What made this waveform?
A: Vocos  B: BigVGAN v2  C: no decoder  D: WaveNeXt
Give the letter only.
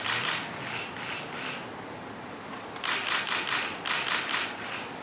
C